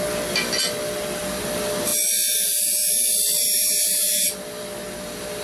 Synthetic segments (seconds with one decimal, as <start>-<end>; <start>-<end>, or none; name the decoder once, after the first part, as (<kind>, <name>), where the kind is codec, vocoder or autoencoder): none